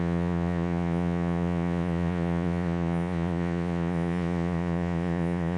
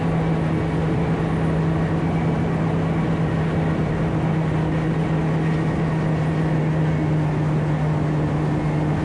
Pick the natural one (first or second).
second